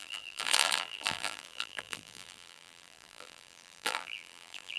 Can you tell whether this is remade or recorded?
remade